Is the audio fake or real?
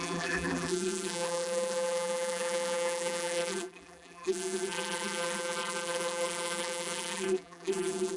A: fake